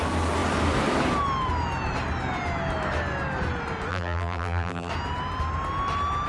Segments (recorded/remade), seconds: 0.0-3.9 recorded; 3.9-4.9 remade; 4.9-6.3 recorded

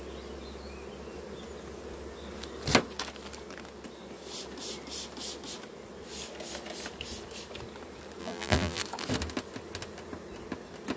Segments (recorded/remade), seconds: 0.0-8.2 recorded; 8.2-8.8 remade; 8.8-11.0 recorded

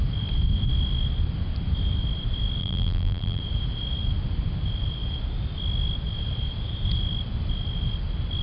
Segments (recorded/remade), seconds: 0.0-2.6 recorded; 2.6-3.4 remade; 3.4-8.4 recorded

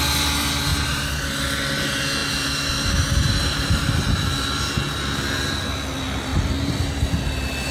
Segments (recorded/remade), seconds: 0.0-6.3 recorded; 6.3-7.0 remade; 7.0-7.7 recorded

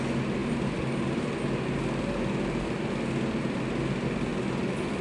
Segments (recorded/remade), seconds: 0.0-4.3 recorded; 4.3-5.0 remade